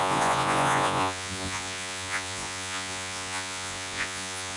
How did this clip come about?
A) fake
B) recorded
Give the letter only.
A